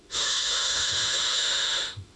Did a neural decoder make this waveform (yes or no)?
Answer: yes